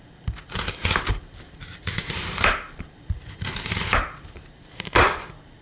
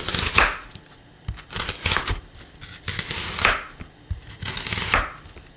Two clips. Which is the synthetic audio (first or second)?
first